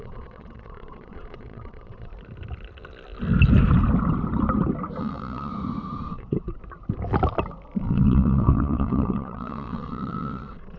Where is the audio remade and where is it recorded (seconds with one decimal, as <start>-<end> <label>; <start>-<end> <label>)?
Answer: 0.0-2.1 remade; 2.1-5.0 recorded; 5.0-5.5 remade; 5.5-6.1 recorded; 6.1-6.6 remade; 6.6-7.8 recorded; 7.8-10.8 remade